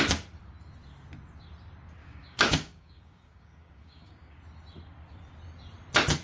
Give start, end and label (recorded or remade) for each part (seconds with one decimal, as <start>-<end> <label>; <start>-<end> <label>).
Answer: 0.0-2.0 recorded; 2.0-4.4 remade; 4.4-6.2 recorded